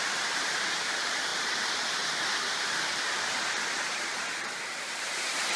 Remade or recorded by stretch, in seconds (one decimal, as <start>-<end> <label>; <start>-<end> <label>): 0.0-5.6 remade